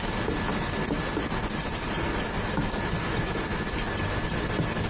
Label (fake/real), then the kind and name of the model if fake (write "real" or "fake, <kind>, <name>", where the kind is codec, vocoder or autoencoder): real